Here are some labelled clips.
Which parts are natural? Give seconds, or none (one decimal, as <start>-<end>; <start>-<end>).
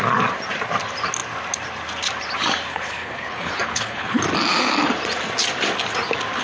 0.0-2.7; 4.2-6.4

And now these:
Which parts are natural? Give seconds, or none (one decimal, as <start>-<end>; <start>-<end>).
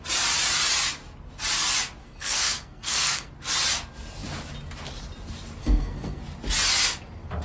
0.0-2.0; 3.3-5.6; 6.2-7.4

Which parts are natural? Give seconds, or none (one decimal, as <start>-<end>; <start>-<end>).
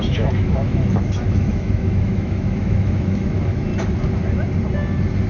3.7-5.3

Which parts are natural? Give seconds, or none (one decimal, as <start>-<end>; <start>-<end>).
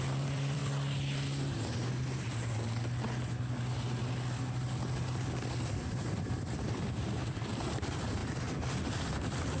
0.6-5.6; 8.2-9.6